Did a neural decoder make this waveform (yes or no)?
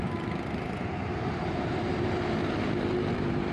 yes